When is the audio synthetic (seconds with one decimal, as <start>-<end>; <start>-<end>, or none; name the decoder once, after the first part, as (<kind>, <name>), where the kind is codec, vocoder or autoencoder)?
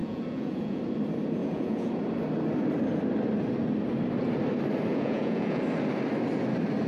0.0-0.8 (vocoder, Vocos); 1.4-1.9; 4.9-5.6